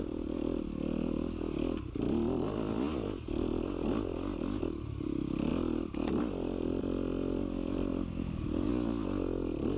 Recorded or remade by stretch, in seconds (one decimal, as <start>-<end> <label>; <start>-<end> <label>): 0.0-5.5 recorded; 5.5-6.2 remade; 6.2-7.9 recorded; 7.9-8.7 remade; 8.7-9.8 recorded